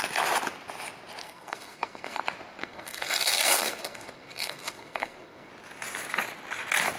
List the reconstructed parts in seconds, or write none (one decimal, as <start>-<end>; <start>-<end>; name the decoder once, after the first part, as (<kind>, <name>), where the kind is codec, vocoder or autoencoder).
1.2-2.2 (codec, SNAC); 2.6-5.5